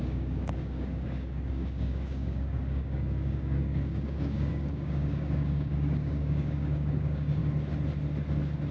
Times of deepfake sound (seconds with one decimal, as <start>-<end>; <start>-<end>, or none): 0.0-7.4